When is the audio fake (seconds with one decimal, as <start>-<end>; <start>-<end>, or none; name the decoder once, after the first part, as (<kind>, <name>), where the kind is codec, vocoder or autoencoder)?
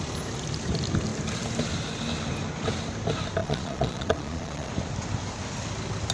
3.4-4.7 (vocoder, Vocos)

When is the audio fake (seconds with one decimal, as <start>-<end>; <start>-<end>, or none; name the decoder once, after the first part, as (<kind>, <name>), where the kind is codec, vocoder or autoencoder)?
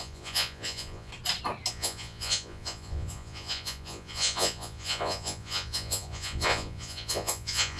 0.0-1.1 (vocoder, Vocos); 1.7-7.8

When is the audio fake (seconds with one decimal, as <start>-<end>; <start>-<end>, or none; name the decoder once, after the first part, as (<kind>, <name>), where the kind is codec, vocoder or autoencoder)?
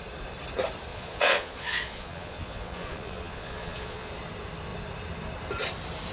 0.9-4.1 (vocoder, Vocos)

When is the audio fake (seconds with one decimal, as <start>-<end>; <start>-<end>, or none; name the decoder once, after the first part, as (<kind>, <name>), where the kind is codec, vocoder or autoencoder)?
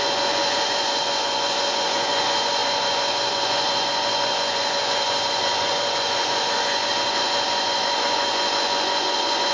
0.0-9.5 (vocoder, Vocos)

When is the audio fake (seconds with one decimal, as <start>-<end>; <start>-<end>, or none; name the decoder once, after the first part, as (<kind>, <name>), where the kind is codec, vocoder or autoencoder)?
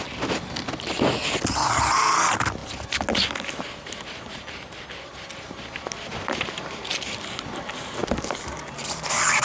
none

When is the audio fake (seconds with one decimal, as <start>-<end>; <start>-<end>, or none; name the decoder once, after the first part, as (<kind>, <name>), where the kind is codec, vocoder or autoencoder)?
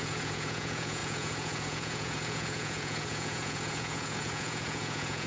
0.0-5.3 (vocoder, Vocos)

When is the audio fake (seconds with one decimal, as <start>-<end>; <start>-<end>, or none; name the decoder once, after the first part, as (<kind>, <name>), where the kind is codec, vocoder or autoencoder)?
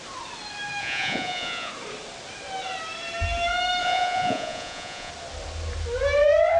0.8-1.7 (vocoder, Vocos); 3.8-5.1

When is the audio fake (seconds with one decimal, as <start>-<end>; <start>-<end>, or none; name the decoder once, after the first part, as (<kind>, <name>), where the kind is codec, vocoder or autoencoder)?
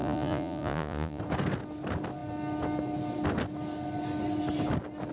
0.0-1.2 (vocoder, Vocos)